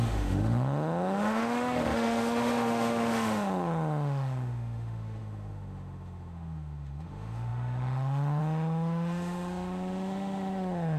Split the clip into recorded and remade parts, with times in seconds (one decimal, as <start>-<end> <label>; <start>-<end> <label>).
0.0-11.0 remade

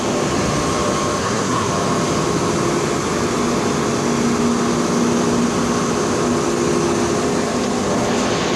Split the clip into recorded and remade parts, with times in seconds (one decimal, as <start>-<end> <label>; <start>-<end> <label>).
0.0-1.2 recorded; 1.2-1.7 remade; 1.7-8.6 recorded

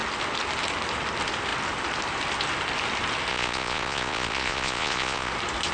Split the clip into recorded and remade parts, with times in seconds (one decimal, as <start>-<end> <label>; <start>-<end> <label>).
0.0-3.3 recorded; 3.3-5.3 remade; 5.3-5.7 recorded